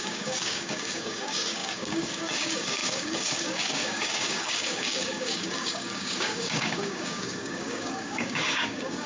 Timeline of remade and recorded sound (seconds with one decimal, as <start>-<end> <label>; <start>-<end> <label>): 0.0-9.1 remade